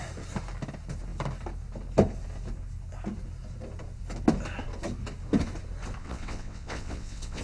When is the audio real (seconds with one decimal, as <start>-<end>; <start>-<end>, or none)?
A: 0.0-6.0